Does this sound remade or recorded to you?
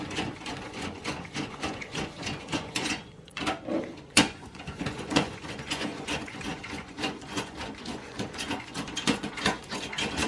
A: remade